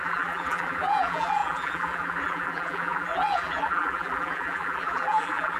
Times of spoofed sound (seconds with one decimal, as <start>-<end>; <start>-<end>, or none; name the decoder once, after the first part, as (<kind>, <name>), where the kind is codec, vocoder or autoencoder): 0.0-5.6 (vocoder, BigVGAN v2)